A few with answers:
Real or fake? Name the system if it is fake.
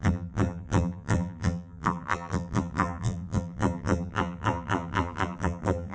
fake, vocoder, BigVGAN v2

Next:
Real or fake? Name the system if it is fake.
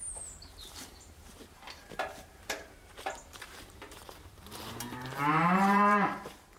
fake, vocoder, BigVGAN v2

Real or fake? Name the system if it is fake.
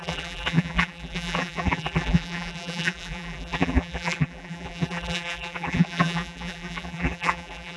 fake, vocoder, BigVGAN v2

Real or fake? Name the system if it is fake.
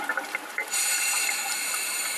fake, vocoder, BigVGAN v2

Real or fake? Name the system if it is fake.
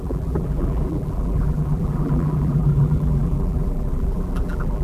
fake, vocoder, BigVGAN v2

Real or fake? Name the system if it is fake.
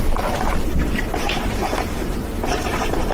fake, vocoder, BigVGAN v2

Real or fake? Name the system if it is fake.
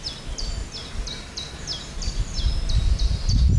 real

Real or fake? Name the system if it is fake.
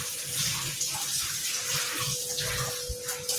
real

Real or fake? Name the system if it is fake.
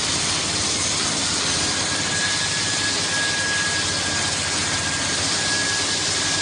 real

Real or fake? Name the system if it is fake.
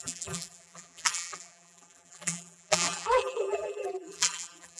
fake, vocoder, BigVGAN v2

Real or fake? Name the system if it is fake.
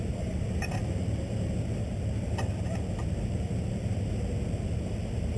real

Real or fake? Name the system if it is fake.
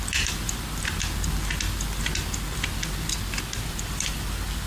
fake, vocoder, BigVGAN v2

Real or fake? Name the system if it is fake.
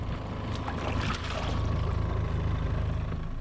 real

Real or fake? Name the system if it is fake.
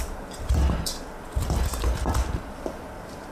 fake, vocoder, BigVGAN v2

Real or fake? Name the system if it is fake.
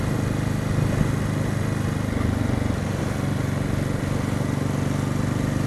real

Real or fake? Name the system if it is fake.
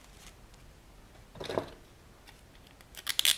real